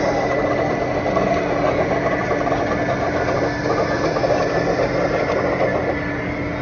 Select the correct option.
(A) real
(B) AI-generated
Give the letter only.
A